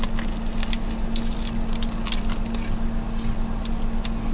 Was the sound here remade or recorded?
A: recorded